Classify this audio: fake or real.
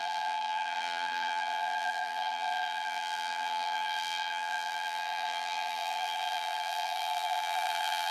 fake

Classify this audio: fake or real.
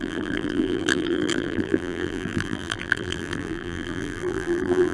fake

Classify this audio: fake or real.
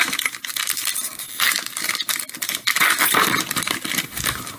real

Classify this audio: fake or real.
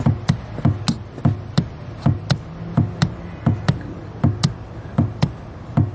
real